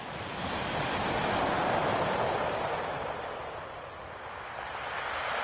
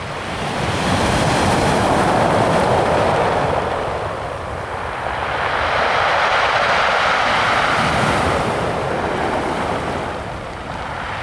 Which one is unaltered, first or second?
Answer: first